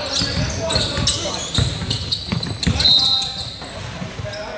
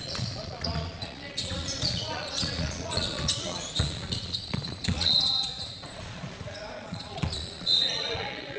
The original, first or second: first